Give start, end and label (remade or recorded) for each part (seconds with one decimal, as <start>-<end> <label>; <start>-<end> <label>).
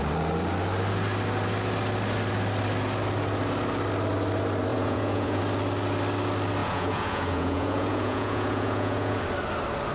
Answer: 0.0-4.7 recorded; 4.7-5.4 remade; 5.4-6.6 recorded; 6.6-9.2 remade; 9.2-9.9 recorded